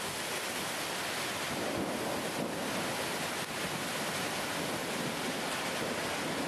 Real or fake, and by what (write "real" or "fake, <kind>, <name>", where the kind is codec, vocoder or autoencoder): real